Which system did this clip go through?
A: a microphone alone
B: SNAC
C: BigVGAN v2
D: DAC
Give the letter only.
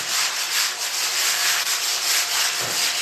A